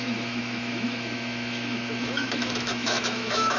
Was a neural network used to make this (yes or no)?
yes